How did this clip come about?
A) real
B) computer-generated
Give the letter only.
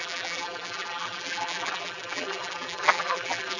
B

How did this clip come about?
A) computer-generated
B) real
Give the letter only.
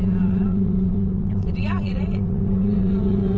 A